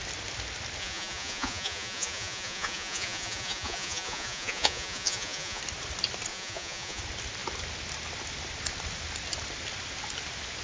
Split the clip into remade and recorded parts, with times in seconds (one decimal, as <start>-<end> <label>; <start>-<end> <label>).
0.0-0.8 recorded; 0.8-5.6 remade; 5.6-6.3 recorded; 6.3-7.0 remade; 7.0-10.6 recorded